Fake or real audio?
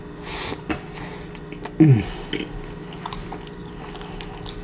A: real